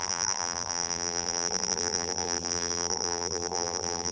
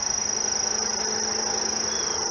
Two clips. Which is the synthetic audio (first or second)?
first